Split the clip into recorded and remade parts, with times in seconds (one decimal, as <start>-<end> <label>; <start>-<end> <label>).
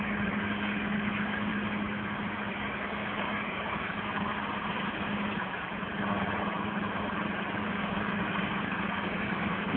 0.0-1.5 remade; 1.5-2.5 recorded; 2.5-4.3 remade; 4.3-7.5 recorded; 7.5-9.8 remade